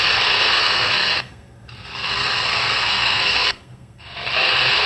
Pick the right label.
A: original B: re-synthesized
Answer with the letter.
B